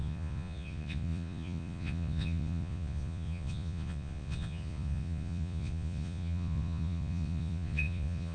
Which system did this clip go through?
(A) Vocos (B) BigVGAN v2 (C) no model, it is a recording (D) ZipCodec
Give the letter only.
A